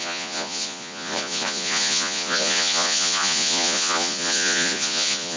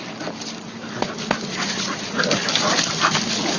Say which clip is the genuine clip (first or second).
second